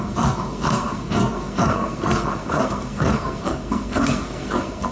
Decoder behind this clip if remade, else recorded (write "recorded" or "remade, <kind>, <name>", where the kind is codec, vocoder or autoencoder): remade, codec, SNAC